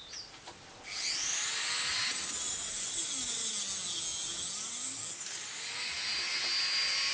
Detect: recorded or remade recorded